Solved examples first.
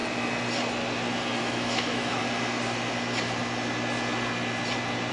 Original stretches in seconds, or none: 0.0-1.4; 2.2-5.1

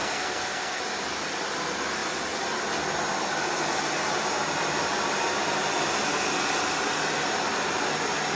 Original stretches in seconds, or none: 0.8-8.3

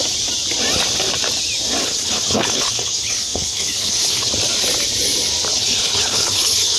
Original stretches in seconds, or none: 0.0-1.8; 4.3-5.5

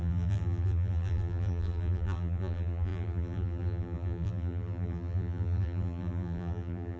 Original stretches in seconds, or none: none